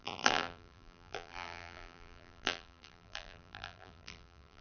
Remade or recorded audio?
remade